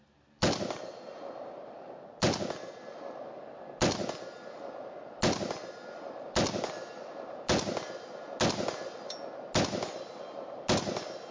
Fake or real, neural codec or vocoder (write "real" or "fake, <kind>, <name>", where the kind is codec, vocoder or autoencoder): real